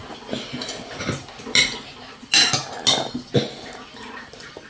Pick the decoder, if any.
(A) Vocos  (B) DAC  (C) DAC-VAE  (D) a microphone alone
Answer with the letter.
D